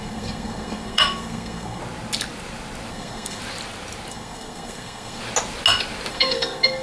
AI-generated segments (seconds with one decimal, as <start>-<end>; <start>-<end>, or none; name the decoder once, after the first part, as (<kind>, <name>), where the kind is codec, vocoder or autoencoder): 0.0-1.8 (codec, SNAC); 2.9-3.4; 4.1-5.2; 6.1-6.8